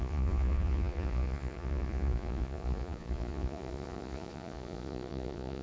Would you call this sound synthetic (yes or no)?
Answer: yes